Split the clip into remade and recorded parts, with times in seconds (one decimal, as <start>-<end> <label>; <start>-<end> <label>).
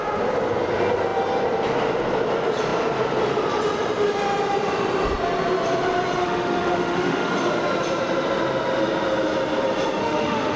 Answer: 0.0-6.2 recorded; 6.2-7.3 remade; 7.3-10.0 recorded; 10.0-10.6 remade